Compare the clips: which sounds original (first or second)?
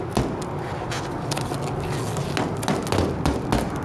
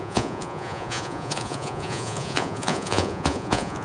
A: first